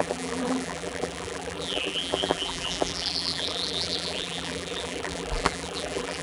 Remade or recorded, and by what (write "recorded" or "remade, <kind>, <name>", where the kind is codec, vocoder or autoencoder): remade, vocoder, BigVGAN v2